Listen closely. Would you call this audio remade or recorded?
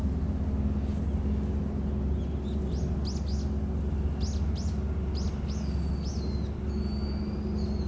recorded